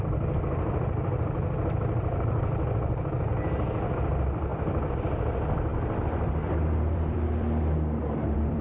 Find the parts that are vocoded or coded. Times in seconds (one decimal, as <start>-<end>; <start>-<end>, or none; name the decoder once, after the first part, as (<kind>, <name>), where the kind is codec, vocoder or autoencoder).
0.0-8.6 (vocoder, BigVGAN v2)